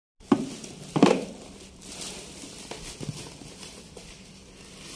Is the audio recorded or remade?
remade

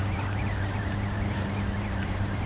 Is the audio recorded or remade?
remade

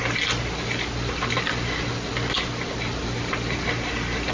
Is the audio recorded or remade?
recorded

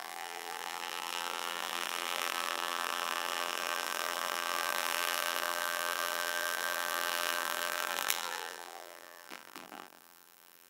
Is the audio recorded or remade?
remade